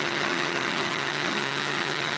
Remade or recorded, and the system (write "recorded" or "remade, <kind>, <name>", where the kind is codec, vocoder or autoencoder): remade, vocoder, HiFi-GAN